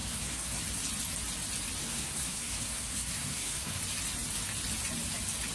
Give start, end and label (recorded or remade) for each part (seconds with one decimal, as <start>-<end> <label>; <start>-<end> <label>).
0.0-0.6 remade; 0.6-1.8 recorded; 1.8-3.8 remade; 3.8-5.5 recorded